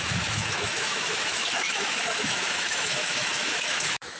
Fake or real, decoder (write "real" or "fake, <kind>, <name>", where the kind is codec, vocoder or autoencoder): fake, autoencoder, DAC-VAE